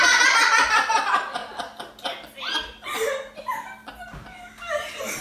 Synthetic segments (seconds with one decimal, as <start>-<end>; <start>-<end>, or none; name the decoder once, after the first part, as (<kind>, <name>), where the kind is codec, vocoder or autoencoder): none